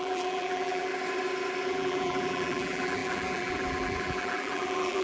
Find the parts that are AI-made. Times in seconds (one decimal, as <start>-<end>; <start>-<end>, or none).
0.0-0.9; 1.7-5.0